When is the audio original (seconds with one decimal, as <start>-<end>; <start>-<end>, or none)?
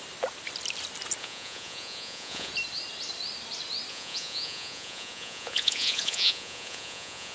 0.0-1.2; 2.5-3.9